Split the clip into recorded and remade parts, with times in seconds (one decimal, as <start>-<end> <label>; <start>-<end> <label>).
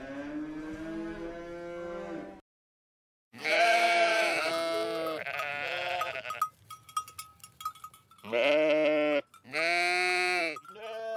0.0-2.8 recorded; 2.8-4.5 remade; 4.5-11.2 recorded